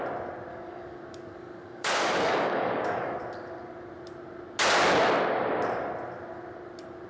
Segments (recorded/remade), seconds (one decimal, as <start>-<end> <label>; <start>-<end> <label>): 0.0-0.5 recorded; 0.5-3.2 remade; 3.2-7.1 recorded